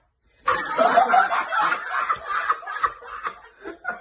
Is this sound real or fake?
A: real